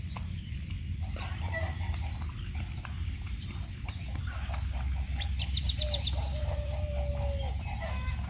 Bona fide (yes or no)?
yes